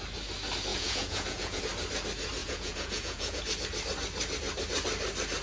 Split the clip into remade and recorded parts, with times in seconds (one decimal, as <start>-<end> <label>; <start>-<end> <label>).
0.0-0.7 recorded; 0.7-1.6 remade; 1.6-2.4 recorded; 2.4-3.4 remade; 3.4-5.4 recorded